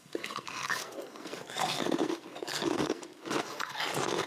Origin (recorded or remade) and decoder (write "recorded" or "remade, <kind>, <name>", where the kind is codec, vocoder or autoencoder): remade, codec, SNAC